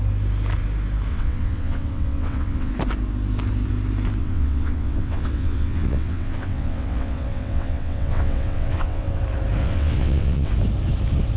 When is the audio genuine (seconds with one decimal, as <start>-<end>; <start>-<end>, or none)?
0.0-1.1; 2.7-4.2; 9.2-9.6; 10.5-11.4